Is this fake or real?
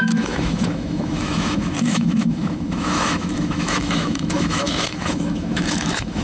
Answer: fake